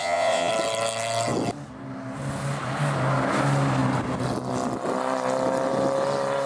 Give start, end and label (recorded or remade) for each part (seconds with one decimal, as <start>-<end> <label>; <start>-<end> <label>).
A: 0.0-0.5 remade; 0.5-6.5 recorded